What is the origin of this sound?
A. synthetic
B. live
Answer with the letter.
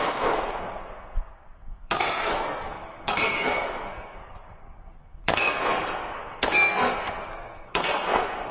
A